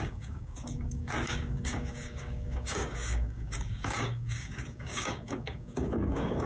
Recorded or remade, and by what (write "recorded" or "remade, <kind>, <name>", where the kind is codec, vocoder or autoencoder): remade, codec, DAC